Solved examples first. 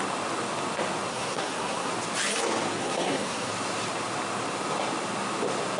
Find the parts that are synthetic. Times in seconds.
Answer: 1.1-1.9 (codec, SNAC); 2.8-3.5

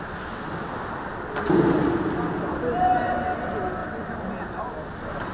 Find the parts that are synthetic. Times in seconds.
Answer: none

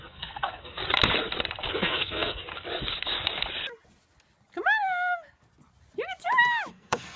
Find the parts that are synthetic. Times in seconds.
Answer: 0.0-0.8 (codec, SNAC); 1.7-2.4; 6.7-7.2

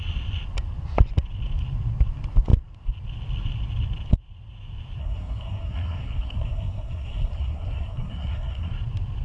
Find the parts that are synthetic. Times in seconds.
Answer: 5.0-8.7 (codec, SNAC)

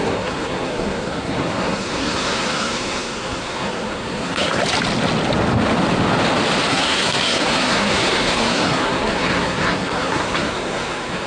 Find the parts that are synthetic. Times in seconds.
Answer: 0.0-4.6 (codec, SNAC); 6.7-11.3